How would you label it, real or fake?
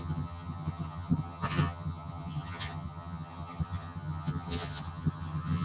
fake